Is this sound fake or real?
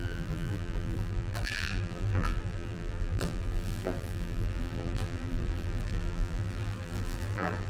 fake